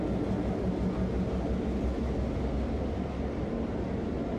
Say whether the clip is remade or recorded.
recorded